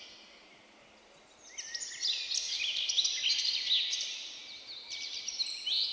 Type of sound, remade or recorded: recorded